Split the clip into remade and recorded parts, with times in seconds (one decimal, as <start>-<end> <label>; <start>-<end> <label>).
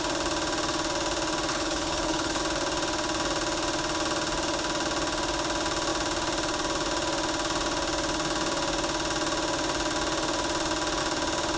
0.0-1.5 recorded; 1.5-2.4 remade; 2.4-11.6 recorded